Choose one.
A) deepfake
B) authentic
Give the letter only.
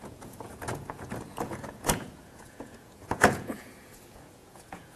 A